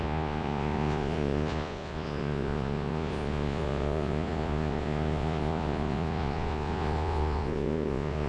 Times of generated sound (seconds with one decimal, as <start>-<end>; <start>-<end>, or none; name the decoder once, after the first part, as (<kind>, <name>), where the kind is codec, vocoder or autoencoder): 0.0-8.3 (vocoder, Vocos)